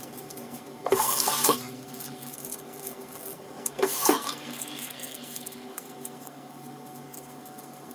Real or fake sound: fake